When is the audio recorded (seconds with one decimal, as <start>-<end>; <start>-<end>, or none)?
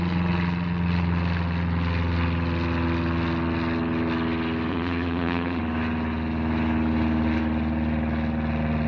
0.0-4.7; 5.6-8.9